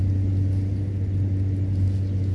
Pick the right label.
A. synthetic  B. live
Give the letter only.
B